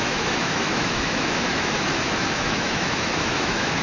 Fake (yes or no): yes